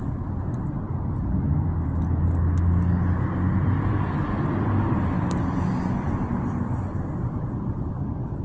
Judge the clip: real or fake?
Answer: real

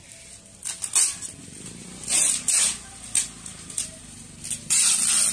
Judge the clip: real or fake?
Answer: real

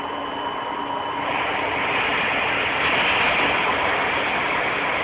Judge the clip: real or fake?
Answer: real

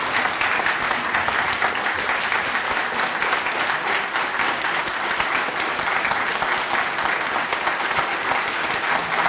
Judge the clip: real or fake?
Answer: real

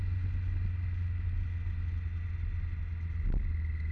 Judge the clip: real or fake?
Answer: real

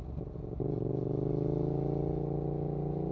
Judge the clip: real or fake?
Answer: real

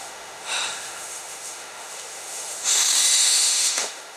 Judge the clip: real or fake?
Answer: fake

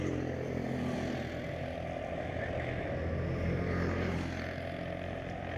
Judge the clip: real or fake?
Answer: real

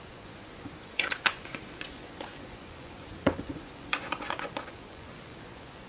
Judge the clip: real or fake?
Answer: fake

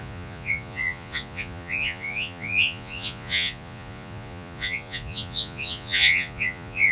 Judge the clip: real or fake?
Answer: fake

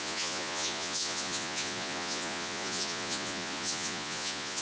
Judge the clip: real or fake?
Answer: fake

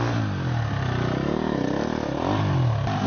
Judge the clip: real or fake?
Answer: real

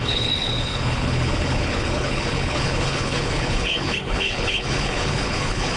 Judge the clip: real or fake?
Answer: fake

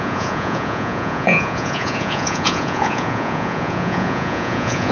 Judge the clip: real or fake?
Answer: fake